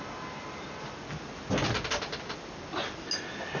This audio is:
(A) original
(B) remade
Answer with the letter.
A